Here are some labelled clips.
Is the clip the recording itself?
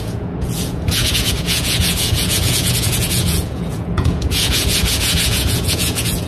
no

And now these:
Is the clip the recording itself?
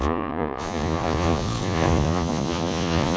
no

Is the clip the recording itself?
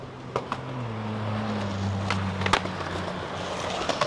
yes